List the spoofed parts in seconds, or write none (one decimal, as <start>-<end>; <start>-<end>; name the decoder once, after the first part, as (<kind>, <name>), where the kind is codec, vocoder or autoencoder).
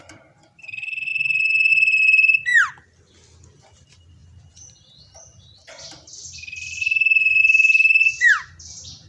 0.0-2.5 (vocoder, BigVGAN v2); 3.6-4.2; 7.4-9.1